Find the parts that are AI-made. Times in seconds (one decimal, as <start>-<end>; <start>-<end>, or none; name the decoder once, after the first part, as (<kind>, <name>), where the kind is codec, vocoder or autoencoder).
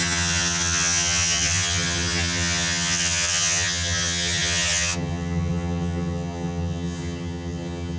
0.0-8.0 (vocoder, HiFi-GAN)